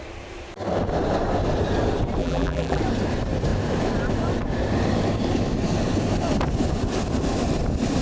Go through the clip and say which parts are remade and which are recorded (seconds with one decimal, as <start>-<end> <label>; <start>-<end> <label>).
0.0-2.2 recorded; 2.2-2.8 remade; 2.8-8.0 recorded